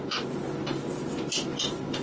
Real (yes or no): yes